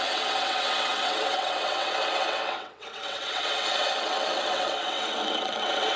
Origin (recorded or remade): remade